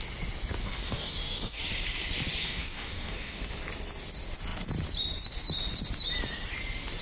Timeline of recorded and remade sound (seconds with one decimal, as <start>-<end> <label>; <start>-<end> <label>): 0.0-0.6 recorded; 0.6-1.6 remade; 1.6-2.4 recorded; 2.4-3.4 remade; 3.4-7.0 recorded